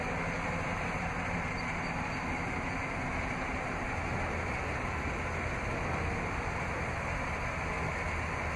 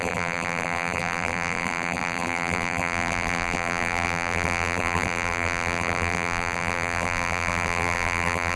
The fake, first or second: second